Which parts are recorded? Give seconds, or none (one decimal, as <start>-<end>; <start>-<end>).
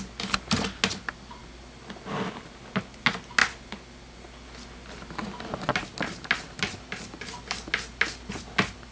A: 0.0-8.9